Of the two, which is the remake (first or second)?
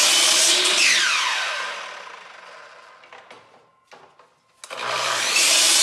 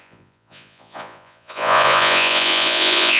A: second